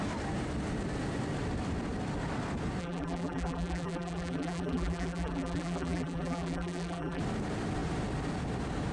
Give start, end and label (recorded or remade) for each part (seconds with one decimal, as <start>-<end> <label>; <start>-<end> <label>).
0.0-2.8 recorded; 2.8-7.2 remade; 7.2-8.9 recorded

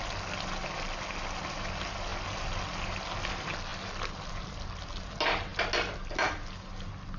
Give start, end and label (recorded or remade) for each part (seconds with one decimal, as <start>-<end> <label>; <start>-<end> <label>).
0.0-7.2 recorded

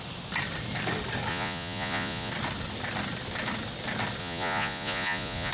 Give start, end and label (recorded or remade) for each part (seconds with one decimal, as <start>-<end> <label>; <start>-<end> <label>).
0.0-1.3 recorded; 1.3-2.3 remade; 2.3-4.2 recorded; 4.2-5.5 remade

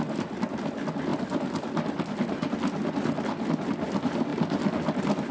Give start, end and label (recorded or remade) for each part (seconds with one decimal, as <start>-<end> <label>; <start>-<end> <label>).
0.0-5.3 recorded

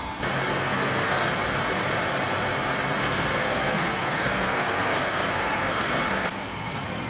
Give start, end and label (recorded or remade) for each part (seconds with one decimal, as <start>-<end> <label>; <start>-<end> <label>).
0.0-0.5 recorded; 0.5-1.3 remade; 1.3-3.0 recorded; 3.0-7.1 remade

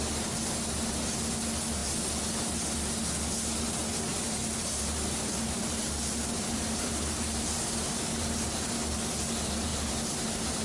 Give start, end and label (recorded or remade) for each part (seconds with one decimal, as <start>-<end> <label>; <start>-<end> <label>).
0.0-4.1 recorded; 4.1-8.9 remade; 8.9-9.7 recorded; 9.7-10.6 remade